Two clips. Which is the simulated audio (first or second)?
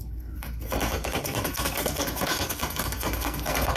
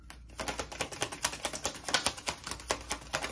first